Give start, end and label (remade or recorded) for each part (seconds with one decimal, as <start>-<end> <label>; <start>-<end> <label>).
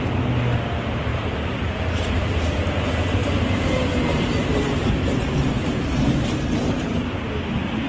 0.0-1.1 recorded; 1.1-2.6 remade; 2.6-3.2 recorded; 3.2-6.3 remade; 6.3-7.9 recorded